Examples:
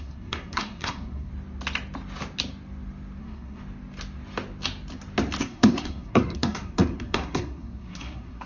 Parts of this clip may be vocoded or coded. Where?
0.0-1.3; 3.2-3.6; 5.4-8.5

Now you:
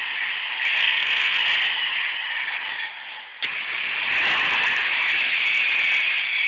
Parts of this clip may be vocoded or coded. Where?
0.8-1.4

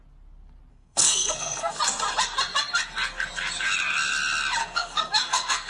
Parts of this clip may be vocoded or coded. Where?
0.7-1.8; 4.6-5.7

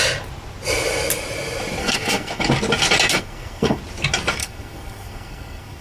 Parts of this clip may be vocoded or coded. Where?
1.8-2.5; 3.1-3.8; 4.4-5.8

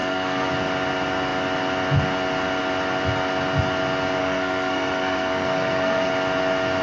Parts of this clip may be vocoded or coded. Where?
0.0-0.5; 4.2-6.1

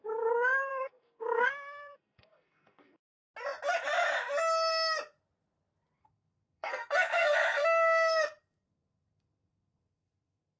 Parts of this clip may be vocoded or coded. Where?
0.0-3.2; 6.0-10.6

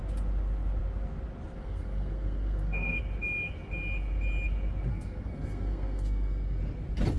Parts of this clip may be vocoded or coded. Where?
1.6-3.0; 4.9-6.6

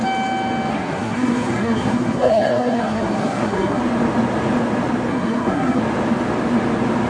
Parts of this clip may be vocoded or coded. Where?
0.7-3.8; 5.1-5.8